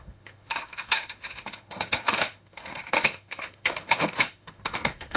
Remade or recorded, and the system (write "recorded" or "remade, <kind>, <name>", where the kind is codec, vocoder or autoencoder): remade, autoencoder, DAC-VAE